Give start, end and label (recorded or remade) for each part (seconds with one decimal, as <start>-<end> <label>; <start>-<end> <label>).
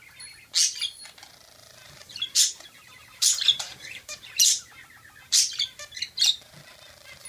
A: 0.0-1.6 recorded; 1.6-6.0 remade; 6.0-7.3 recorded